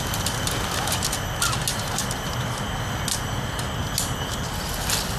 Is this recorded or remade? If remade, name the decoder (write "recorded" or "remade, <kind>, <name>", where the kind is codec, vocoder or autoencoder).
recorded